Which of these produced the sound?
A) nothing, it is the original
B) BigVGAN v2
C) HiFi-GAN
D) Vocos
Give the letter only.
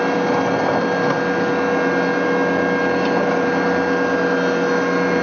A